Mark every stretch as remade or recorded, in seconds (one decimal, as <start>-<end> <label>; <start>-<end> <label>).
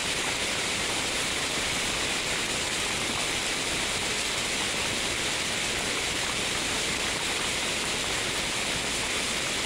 0.0-1.9 remade; 1.9-9.7 recorded